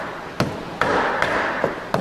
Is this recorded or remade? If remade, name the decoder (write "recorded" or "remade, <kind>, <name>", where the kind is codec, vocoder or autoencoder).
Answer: recorded